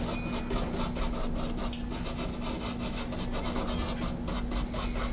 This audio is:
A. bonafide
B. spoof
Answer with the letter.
A